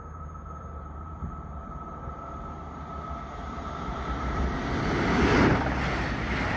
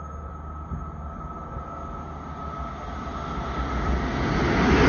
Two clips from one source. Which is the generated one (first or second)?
first